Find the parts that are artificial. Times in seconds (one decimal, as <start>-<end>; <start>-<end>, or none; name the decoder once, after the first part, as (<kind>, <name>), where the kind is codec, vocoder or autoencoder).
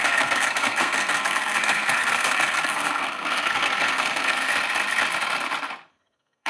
0.0-4.5 (codec, SNAC); 5.9-6.5